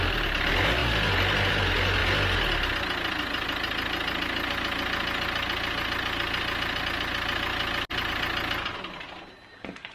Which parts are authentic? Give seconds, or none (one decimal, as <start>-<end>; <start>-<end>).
0.0-9.9